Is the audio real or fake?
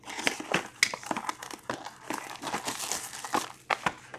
real